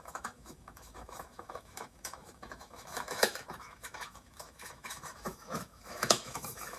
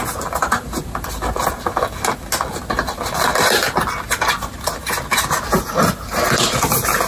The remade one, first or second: first